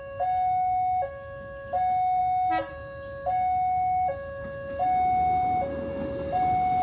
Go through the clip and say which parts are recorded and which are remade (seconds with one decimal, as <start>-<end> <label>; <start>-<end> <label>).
0.0-6.8 recorded

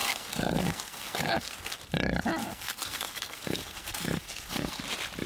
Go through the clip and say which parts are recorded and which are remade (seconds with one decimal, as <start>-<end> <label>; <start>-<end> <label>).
0.0-1.8 remade; 1.8-2.4 recorded; 2.4-4.8 remade; 4.8-5.3 recorded

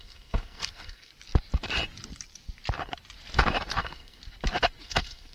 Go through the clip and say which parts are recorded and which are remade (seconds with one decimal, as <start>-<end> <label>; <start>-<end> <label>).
0.0-1.1 remade; 1.1-3.8 recorded; 3.8-4.2 remade; 4.2-4.8 recorded; 4.8-5.3 remade

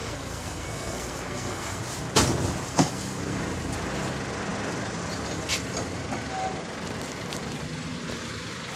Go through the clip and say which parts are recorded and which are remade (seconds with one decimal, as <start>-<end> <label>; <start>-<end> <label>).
0.0-1.8 remade; 1.8-2.7 recorded; 2.7-3.4 remade; 3.4-8.8 recorded

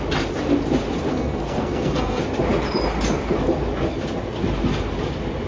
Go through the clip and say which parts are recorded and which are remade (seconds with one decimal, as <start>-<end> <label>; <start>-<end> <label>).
0.0-1.1 recorded; 1.1-2.2 remade; 2.2-5.5 recorded